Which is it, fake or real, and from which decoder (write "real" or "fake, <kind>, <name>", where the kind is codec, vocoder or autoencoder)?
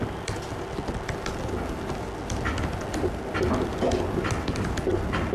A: real